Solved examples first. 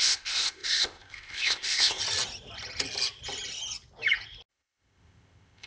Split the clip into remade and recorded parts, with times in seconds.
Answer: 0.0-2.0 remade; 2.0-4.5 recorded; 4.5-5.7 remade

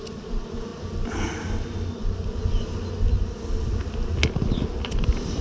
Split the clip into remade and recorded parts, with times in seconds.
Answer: 0.0-5.4 recorded

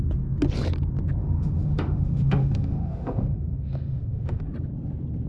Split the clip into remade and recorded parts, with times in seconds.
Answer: 0.0-1.2 recorded; 1.2-4.4 remade; 4.4-5.3 recorded

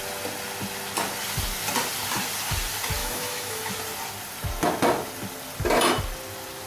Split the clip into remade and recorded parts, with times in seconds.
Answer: 0.0-3.0 recorded; 3.0-3.7 remade; 3.7-6.7 recorded

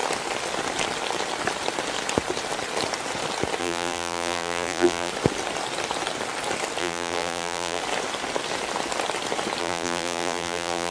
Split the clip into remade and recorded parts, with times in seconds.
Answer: 0.0-3.6 recorded; 3.6-5.1 remade; 5.1-6.8 recorded; 6.8-7.8 remade; 7.8-9.6 recorded; 9.6-10.9 remade

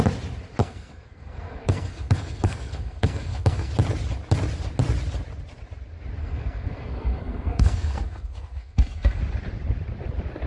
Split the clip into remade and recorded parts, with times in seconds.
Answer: 0.0-0.6 recorded; 0.6-3.7 remade; 3.7-6.2 recorded; 6.2-9.2 remade; 9.2-10.5 recorded

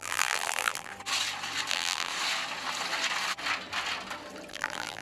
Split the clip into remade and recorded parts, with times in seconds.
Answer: 0.0-0.9 remade; 0.9-1.7 recorded; 1.7-2.1 remade; 2.1-4.5 recorded; 4.5-5.0 remade